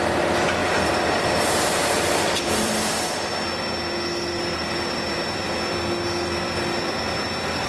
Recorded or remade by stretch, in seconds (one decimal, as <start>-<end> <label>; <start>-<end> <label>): 0.0-0.6 recorded; 0.6-2.9 remade; 2.9-4.6 recorded; 4.6-5.4 remade; 5.4-7.7 recorded